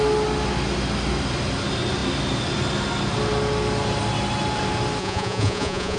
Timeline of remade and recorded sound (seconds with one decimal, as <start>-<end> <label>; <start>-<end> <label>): 0.0-5.0 recorded; 5.0-6.0 remade